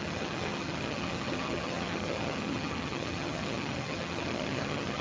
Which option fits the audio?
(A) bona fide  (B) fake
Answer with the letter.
B